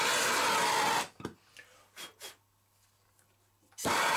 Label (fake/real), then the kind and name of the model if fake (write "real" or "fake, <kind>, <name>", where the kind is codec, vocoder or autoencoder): real